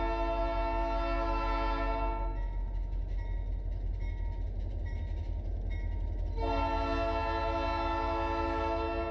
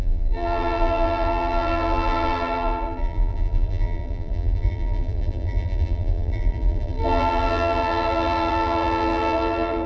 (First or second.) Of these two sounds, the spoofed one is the second